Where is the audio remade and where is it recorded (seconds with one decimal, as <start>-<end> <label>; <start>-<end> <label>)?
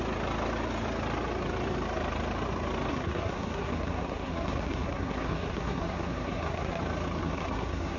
0.0-2.9 recorded; 2.9-6.8 remade; 6.8-7.2 recorded; 7.2-8.0 remade